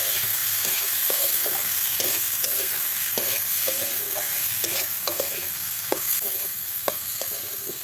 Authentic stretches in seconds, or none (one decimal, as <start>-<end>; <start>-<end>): none